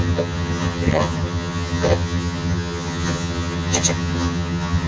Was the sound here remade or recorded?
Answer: remade